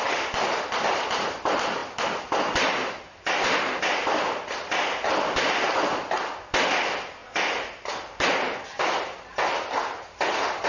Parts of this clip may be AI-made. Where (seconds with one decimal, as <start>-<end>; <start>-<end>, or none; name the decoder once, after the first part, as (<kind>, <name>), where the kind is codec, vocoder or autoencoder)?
none